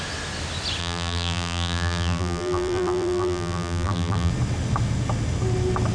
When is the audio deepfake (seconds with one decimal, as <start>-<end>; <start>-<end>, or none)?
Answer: 0.8-4.3